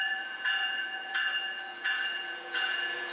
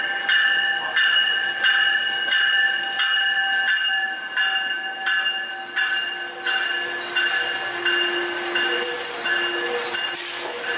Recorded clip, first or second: second